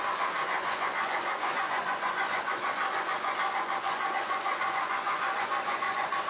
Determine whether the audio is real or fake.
fake